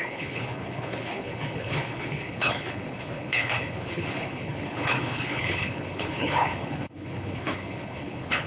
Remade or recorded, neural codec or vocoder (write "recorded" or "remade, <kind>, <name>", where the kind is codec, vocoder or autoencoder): remade, codec, HILCodec